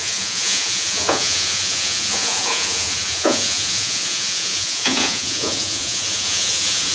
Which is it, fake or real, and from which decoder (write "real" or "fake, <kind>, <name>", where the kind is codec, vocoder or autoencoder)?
fake, vocoder, Vocos